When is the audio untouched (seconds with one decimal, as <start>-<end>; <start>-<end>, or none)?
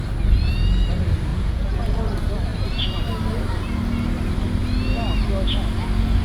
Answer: 0.0-1.3; 1.8-6.2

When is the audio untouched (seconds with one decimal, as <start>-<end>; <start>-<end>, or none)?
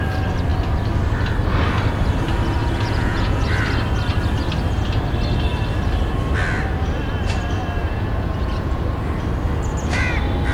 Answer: 0.0-2.6; 3.4-7.8; 8.8-10.5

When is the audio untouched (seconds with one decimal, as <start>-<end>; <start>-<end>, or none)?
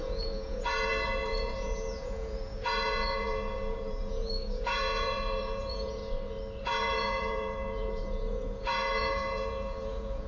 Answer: 6.0-6.6